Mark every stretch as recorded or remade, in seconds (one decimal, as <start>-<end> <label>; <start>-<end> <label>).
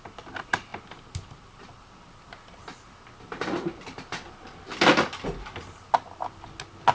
0.0-6.9 recorded